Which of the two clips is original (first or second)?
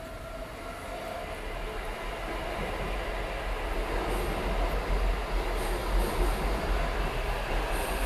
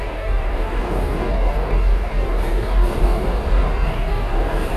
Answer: first